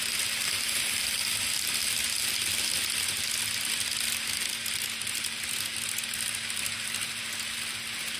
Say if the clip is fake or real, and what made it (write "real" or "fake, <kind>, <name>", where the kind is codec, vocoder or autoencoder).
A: real